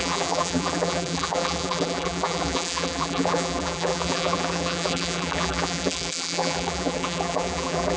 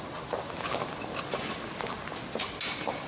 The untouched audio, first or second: second